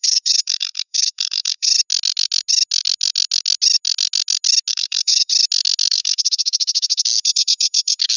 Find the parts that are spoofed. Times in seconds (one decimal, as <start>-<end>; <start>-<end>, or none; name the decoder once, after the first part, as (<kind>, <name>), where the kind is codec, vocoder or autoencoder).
0.0-1.7 (codec, SNAC); 4.7-5.3; 5.9-8.2